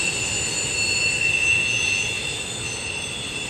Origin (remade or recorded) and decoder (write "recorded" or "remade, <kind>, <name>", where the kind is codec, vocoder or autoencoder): recorded